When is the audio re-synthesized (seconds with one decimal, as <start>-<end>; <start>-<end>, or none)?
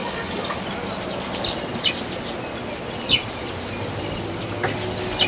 0.0-0.6